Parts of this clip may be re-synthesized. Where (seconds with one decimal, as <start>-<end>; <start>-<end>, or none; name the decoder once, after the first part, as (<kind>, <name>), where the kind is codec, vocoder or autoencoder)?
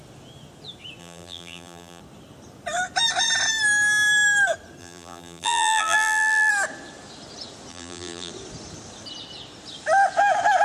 1.0-2.0 (vocoder, BigVGAN v2); 4.8-6.5; 7.7-8.3